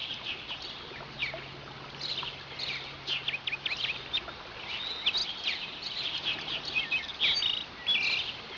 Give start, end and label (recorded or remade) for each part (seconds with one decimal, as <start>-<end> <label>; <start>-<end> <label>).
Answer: 0.0-8.6 recorded

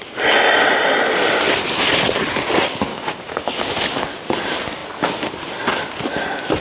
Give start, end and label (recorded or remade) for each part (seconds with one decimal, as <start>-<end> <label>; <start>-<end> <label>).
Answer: 0.0-2.9 recorded; 2.9-3.7 remade; 3.7-6.6 recorded

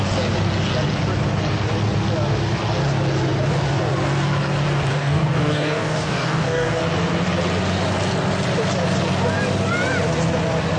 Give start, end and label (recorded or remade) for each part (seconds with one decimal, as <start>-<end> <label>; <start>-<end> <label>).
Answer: 0.0-4.9 recorded; 4.9-6.8 remade; 6.8-10.8 recorded

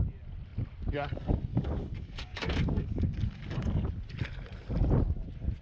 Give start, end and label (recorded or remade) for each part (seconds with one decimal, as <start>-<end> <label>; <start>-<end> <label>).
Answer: 0.0-1.5 recorded; 1.5-3.9 remade; 3.9-5.6 recorded